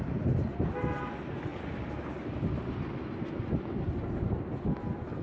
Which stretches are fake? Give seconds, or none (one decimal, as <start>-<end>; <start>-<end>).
none